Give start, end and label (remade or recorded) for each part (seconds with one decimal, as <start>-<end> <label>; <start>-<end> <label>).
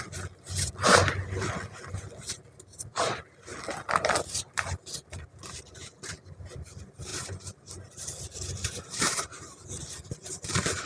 0.0-10.9 recorded